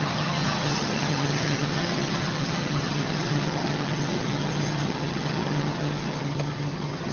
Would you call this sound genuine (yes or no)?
no